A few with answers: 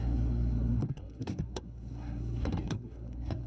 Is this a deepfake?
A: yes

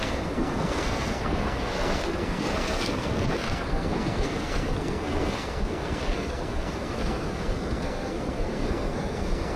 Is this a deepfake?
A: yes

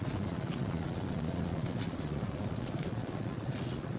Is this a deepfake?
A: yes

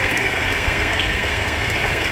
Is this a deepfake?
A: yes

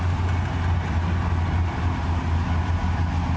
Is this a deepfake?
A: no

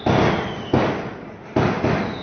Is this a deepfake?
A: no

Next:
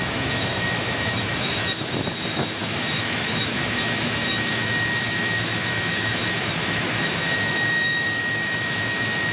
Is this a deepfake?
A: yes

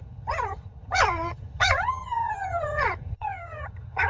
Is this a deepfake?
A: yes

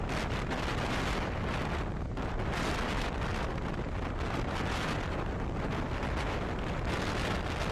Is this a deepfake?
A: no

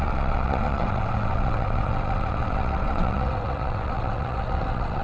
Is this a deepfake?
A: yes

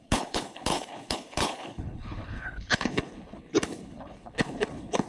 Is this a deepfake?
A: yes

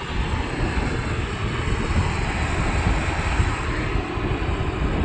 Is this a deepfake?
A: no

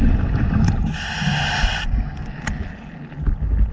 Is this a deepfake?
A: no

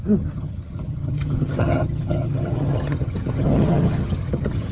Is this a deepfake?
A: yes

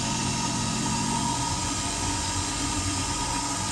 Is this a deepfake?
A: yes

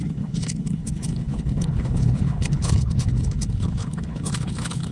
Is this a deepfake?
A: yes